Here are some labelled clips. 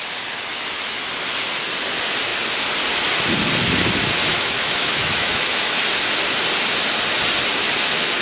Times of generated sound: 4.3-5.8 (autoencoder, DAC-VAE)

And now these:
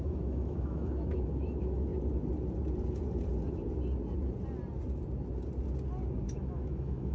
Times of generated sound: 0.0-1.9 (autoencoder, DAC-VAE); 6.2-7.1

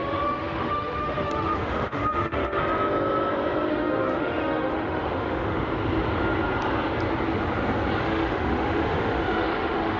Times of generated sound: 0.0-2.6 (autoencoder, DAC-VAE); 3.7-5.6; 8.0-10.0

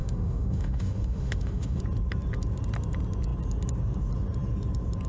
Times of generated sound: 0.0-1.8 (autoencoder, DAC-VAE)